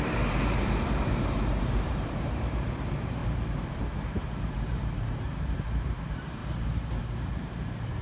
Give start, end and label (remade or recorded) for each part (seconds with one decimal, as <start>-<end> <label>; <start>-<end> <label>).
0.0-3.2 remade; 3.2-3.7 recorded; 3.7-6.4 remade; 6.4-7.0 recorded; 7.0-8.0 remade